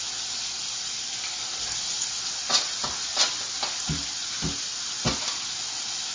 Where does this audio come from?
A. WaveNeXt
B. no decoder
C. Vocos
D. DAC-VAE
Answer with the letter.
B